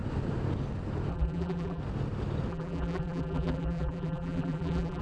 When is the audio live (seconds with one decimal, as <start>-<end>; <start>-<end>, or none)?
0.0-1.1; 1.8-2.5